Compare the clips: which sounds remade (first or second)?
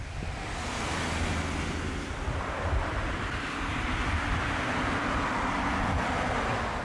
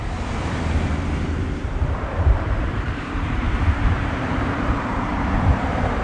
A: second